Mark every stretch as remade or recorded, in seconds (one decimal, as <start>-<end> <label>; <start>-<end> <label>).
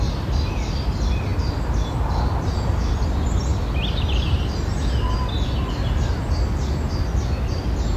0.0-8.0 recorded